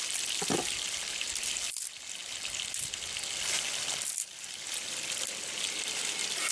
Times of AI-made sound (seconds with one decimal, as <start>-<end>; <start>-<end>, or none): none